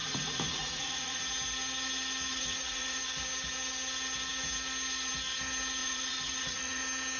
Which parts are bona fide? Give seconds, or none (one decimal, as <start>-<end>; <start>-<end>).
1.2-2.3; 3.0-5.8; 6.8-7.2